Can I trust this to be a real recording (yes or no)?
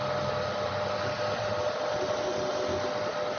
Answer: yes